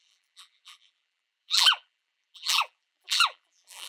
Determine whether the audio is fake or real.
fake